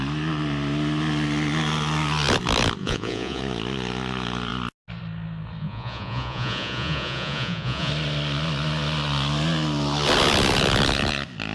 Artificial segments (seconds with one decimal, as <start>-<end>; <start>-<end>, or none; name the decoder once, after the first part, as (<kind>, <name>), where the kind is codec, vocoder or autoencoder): 2.8-3.4 (vocoder, Vocos); 5.6-7.9